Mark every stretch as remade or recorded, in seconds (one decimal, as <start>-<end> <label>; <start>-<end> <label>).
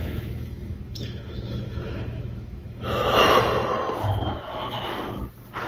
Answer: 0.0-3.4 remade; 3.4-4.2 recorded; 4.2-5.2 remade; 5.2-5.7 recorded